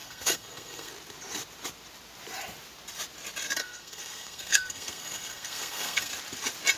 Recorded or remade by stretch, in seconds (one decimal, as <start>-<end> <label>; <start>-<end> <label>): 0.0-0.9 remade; 0.9-3.6 recorded; 3.6-6.1 remade; 6.1-6.8 recorded